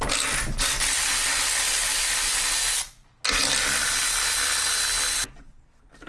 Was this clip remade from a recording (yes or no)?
no